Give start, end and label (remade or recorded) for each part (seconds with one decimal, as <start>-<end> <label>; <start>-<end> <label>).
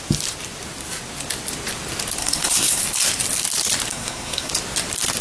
0.0-2.2 recorded; 2.2-2.8 remade; 2.8-3.9 recorded; 3.9-4.5 remade; 4.5-5.2 recorded